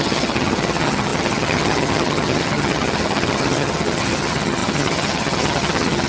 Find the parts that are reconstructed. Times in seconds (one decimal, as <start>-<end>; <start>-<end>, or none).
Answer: 0.0-6.1